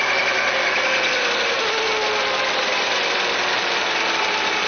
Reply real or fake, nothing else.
real